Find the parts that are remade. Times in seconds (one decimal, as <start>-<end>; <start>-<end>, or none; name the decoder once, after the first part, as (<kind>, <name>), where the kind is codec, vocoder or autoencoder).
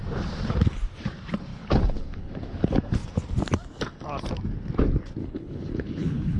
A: 1.5-2.3 (codec, HILCodec); 5.2-6.4